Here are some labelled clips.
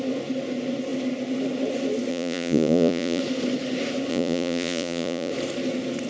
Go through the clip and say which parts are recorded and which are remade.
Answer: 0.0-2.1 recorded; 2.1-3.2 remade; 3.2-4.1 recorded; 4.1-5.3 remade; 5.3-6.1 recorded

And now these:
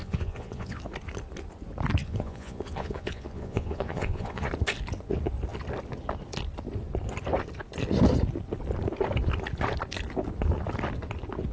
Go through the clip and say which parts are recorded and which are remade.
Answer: 0.0-0.8 remade; 0.8-2.0 recorded; 2.0-4.5 remade; 4.5-11.5 recorded